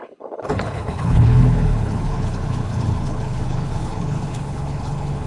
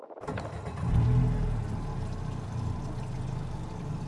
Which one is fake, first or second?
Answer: first